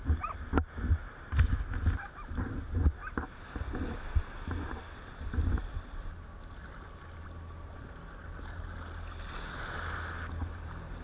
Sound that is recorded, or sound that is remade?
recorded